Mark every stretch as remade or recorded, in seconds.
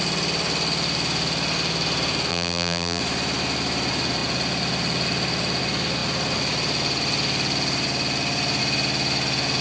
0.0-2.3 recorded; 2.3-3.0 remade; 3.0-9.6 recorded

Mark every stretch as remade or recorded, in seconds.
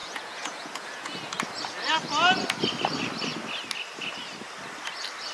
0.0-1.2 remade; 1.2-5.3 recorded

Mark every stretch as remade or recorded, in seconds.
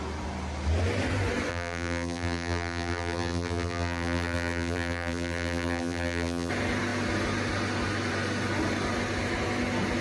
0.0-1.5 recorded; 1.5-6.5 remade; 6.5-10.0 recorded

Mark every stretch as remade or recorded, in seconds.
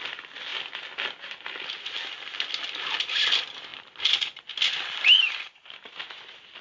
0.0-6.6 recorded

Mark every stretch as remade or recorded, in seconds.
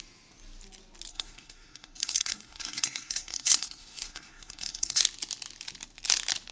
0.0-1.1 recorded; 1.1-5.0 remade; 5.0-6.5 recorded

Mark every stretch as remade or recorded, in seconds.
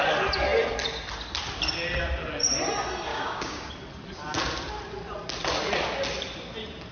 0.0-3.1 recorded; 3.1-3.7 remade; 3.7-6.9 recorded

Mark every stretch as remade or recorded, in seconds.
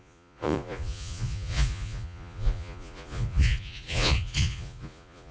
0.0-5.3 remade